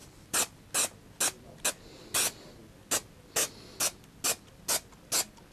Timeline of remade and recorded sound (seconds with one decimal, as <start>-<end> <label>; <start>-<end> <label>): 0.0-0.6 remade; 0.6-5.5 recorded

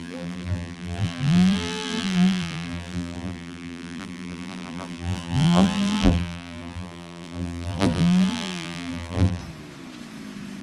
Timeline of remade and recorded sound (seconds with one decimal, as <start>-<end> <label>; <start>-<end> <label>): 0.0-9.4 remade; 9.4-10.6 recorded

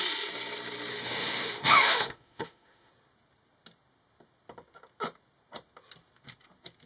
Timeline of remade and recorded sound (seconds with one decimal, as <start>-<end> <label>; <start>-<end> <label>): 0.0-0.9 recorded; 0.9-2.9 remade; 2.9-6.9 recorded

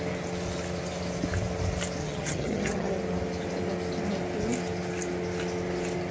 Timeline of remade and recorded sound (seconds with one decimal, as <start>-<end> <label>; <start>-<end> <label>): 0.0-2.0 recorded; 2.0-2.9 remade; 2.9-6.1 recorded

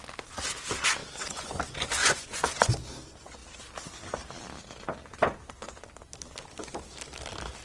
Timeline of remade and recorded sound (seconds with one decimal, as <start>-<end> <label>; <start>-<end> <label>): 0.0-1.0 recorded; 1.0-1.6 remade; 1.6-2.0 recorded; 2.0-2.7 remade; 2.7-7.6 recorded